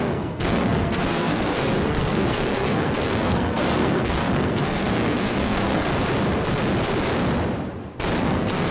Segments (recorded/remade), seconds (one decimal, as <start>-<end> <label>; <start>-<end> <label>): 0.0-5.9 remade; 5.9-8.2 recorded; 8.2-8.7 remade